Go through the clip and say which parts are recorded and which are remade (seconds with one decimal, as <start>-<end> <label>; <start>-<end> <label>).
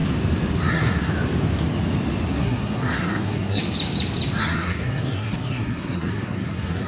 0.0-0.7 recorded; 0.7-1.1 remade; 1.1-2.3 recorded; 2.3-3.6 remade; 3.6-4.4 recorded; 4.4-6.9 remade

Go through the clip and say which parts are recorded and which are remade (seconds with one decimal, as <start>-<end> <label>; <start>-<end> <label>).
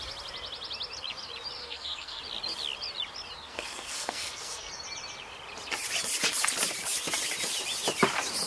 0.0-1.6 recorded; 1.6-2.2 remade; 2.2-3.4 recorded; 3.4-4.7 remade; 4.7-8.5 recorded